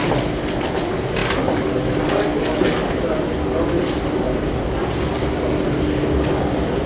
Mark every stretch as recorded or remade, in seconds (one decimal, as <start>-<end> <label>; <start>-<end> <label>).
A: 0.0-6.9 recorded